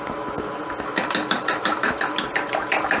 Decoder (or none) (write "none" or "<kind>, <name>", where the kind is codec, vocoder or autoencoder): none